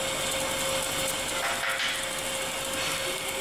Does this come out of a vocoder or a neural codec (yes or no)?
no